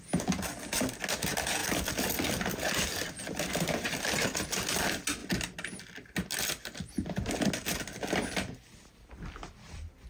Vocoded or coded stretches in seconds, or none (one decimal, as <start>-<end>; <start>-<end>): 1.6-4.0